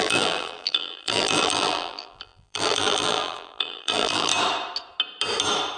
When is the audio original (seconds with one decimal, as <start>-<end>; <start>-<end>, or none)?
4.3-5.8